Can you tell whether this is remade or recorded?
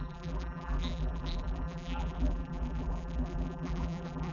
remade